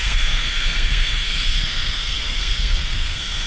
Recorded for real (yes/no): no